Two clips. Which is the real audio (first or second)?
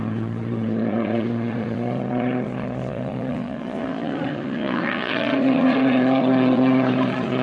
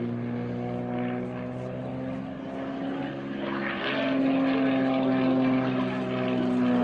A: second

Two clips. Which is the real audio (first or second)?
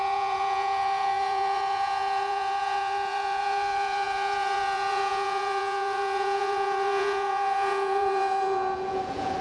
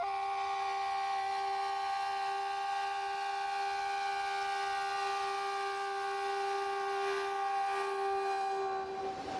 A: second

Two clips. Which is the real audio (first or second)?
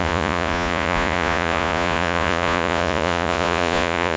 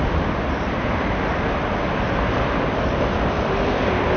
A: second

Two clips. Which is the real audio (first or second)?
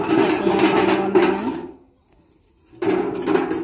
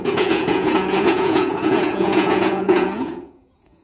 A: first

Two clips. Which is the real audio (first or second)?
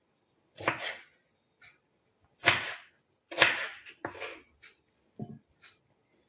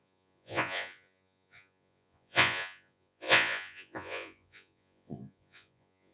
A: first